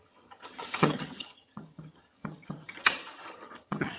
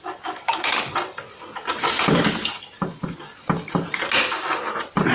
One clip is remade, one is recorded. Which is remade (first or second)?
first